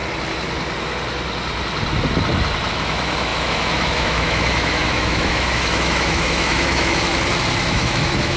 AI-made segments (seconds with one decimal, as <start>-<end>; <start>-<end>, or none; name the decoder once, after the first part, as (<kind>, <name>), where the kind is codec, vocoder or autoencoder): 2.7-7.1 (autoencoder, DAC-VAE); 7.7-8.4